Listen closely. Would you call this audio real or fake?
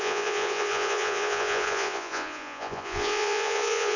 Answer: fake